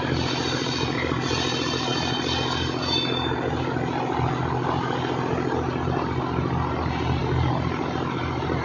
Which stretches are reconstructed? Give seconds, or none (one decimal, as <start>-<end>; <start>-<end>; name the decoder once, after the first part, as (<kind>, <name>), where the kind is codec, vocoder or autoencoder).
none